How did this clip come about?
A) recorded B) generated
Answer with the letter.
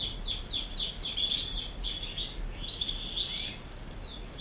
A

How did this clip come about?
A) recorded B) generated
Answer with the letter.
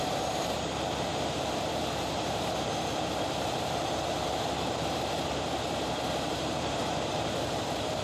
B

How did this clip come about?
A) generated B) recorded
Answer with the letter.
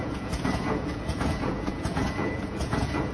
A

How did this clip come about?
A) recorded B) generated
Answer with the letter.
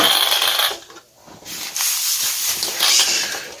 A